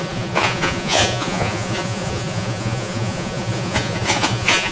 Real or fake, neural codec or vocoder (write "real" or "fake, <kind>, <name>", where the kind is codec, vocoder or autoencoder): fake, vocoder, Vocos